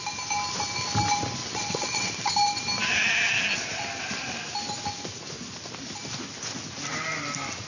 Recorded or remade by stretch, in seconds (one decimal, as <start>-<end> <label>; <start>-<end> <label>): 0.0-1.4 recorded; 1.4-2.3 remade; 2.3-7.7 recorded

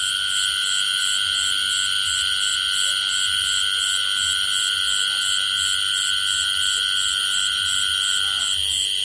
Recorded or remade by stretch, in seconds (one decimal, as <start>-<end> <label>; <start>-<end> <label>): 0.0-9.0 recorded

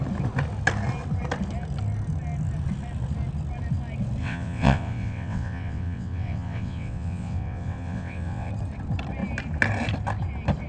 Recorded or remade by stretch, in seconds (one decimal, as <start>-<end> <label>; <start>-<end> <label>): 0.0-4.2 recorded; 4.2-8.5 remade; 8.5-10.7 recorded

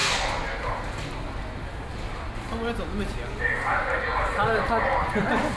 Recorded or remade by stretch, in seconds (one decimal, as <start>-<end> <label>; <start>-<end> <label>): 0.0-5.6 recorded

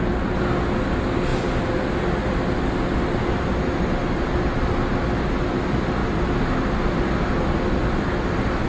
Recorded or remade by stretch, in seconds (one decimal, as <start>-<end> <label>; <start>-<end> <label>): 0.0-8.7 recorded

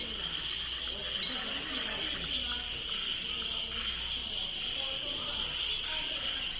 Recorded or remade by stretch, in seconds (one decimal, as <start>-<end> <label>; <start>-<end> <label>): 0.0-6.6 recorded

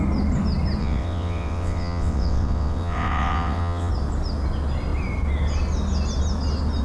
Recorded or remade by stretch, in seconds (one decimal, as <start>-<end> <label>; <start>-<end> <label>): 0.0-0.8 recorded; 0.8-3.9 remade; 3.9-6.8 recorded